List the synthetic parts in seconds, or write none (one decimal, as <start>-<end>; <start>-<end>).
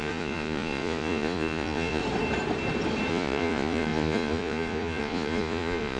0.0-2.0; 3.1-6.0